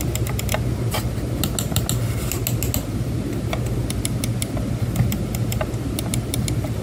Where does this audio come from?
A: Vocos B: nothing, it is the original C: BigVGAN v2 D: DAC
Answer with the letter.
B